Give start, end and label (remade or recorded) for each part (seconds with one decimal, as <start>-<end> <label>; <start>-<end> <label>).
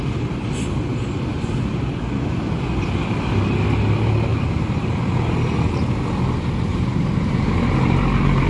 0.0-4.3 recorded; 4.3-5.1 remade; 5.1-6.7 recorded; 6.7-8.5 remade